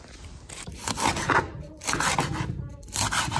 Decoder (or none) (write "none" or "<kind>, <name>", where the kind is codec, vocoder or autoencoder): none